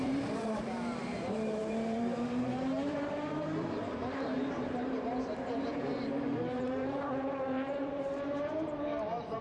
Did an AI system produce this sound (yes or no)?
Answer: yes